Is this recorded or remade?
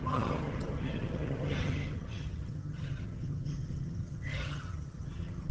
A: remade